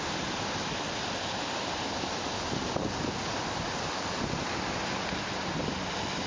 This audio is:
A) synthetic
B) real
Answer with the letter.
A